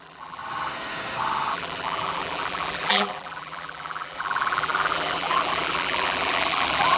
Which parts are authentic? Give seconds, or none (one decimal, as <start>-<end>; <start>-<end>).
0.4-1.5